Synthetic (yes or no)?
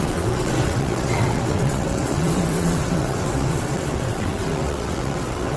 yes